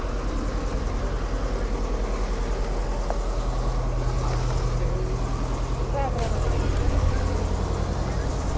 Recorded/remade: recorded